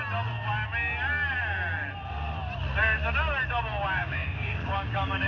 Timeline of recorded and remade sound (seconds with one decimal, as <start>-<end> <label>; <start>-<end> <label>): 0.0-4.0 recorded; 4.0-5.3 remade